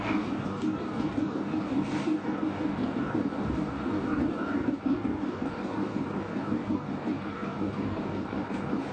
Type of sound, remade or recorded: remade